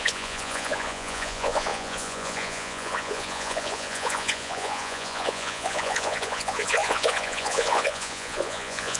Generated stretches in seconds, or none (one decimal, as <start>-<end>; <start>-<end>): 0.0-9.0